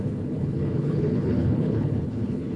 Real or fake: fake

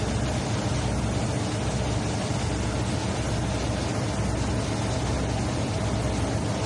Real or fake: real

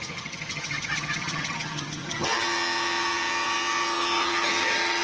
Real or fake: fake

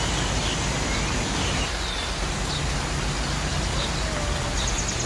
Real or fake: real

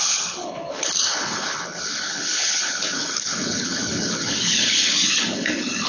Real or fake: fake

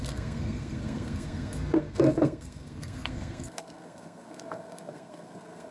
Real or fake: fake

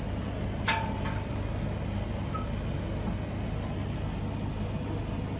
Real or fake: real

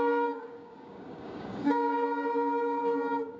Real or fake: fake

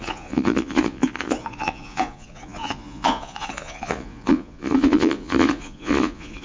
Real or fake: fake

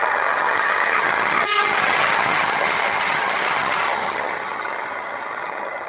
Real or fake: fake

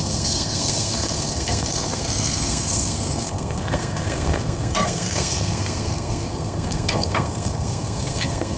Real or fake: fake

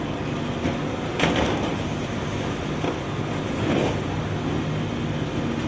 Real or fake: real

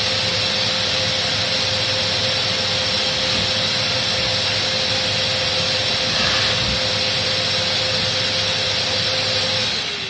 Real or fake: real